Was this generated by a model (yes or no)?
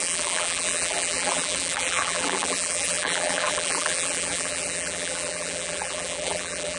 yes